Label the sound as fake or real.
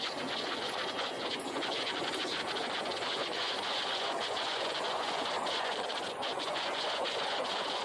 fake